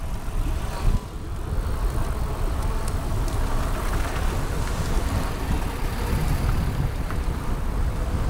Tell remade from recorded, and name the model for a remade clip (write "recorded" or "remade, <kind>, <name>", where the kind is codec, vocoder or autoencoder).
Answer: remade, vocoder, BigVGAN v2